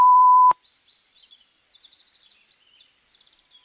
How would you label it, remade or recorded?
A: remade